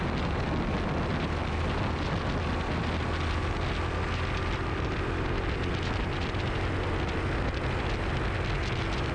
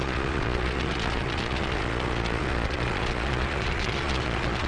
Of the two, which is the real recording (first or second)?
first